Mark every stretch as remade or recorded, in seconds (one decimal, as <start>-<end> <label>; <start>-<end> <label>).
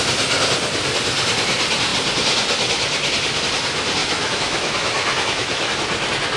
0.0-4.0 recorded; 4.0-5.7 remade; 5.7-6.4 recorded